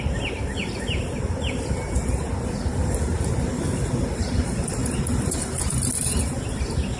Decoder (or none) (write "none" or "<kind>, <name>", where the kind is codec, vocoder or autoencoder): none